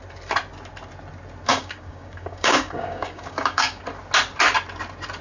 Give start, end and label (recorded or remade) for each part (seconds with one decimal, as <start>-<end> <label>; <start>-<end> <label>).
0.0-1.5 recorded; 1.5-3.8 remade; 3.8-5.2 recorded